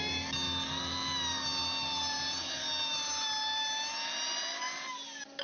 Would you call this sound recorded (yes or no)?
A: yes